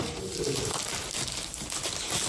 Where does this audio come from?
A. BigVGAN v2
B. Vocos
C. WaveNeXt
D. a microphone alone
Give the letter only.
D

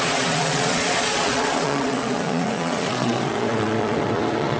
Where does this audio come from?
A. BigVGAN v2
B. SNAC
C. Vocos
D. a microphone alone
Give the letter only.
C